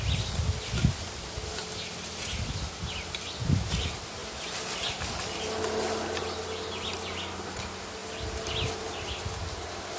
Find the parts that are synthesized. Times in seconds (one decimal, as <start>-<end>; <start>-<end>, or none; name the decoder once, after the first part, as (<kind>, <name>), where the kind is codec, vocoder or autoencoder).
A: none